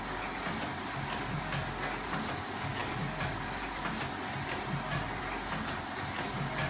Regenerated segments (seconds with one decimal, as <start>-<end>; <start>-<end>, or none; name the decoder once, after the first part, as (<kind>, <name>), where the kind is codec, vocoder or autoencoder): none